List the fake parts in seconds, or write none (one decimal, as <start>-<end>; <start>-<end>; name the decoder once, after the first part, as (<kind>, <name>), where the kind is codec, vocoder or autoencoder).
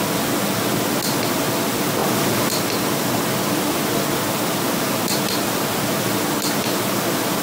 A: none